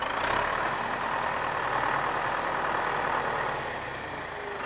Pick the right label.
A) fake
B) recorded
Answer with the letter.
B